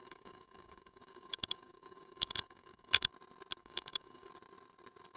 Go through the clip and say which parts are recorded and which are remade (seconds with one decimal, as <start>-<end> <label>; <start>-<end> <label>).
0.0-3.1 remade; 3.1-3.6 recorded; 3.6-4.3 remade; 4.3-5.2 recorded